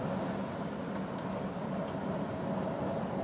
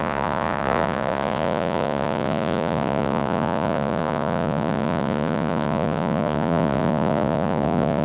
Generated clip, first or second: second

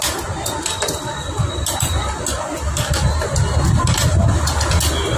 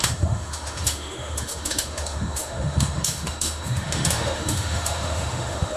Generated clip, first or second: second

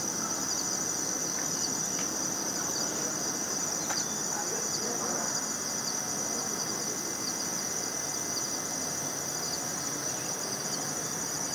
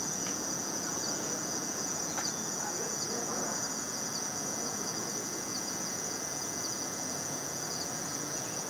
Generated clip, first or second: second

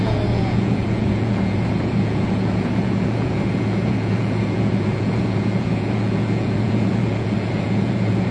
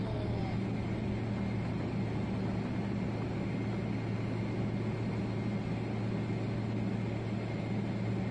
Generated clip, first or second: first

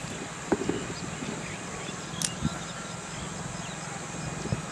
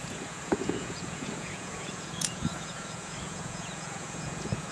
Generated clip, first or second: second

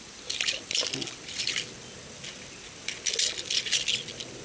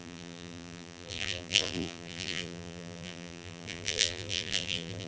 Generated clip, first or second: second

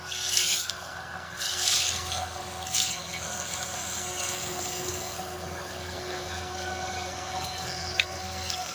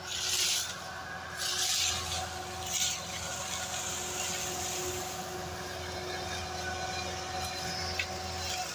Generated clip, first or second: first